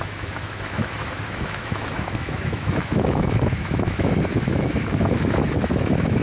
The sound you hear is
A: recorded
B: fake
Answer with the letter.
B